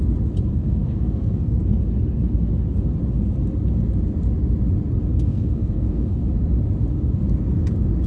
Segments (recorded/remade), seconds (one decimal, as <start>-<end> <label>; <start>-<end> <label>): 0.0-0.5 recorded; 0.5-1.8 remade; 1.8-5.1 recorded; 5.1-6.2 remade; 6.2-8.1 recorded